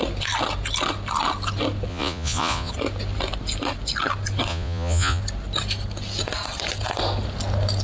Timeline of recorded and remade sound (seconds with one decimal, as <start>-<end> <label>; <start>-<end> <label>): 0.0-1.9 recorded; 1.9-2.7 remade; 2.7-4.5 recorded; 4.5-5.2 remade; 5.2-7.8 recorded